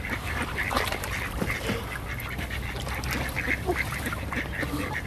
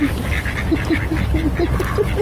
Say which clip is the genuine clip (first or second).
second